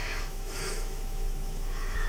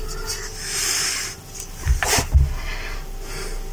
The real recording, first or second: second